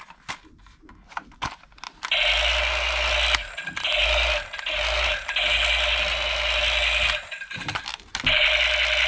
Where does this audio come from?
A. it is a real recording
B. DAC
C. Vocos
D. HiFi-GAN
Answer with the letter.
A